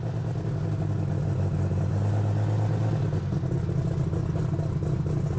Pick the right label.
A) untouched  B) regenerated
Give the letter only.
A